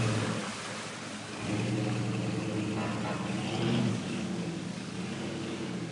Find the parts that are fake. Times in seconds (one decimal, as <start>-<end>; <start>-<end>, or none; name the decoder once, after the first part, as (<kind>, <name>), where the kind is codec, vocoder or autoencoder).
0.0-0.4 (codec, DAC); 3.9-5.9